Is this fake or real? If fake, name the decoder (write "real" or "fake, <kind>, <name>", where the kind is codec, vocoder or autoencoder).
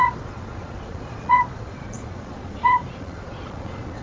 fake, vocoder, Vocos